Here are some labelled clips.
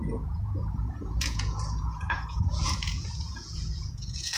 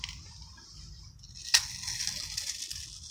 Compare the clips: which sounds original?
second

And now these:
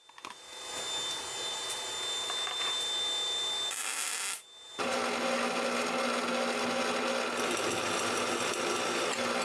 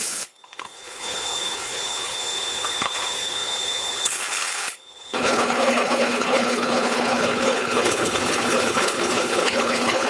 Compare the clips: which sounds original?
first